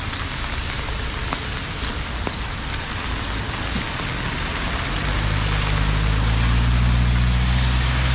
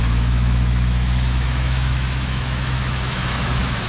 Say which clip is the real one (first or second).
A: first